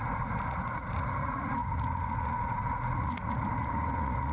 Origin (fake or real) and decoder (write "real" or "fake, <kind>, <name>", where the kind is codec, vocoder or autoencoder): fake, vocoder, Vocos